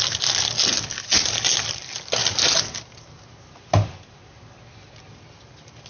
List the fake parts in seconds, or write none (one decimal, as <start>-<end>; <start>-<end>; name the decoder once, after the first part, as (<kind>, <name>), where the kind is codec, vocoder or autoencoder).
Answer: none